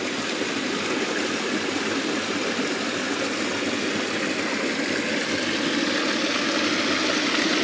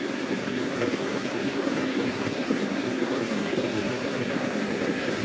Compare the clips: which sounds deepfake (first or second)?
second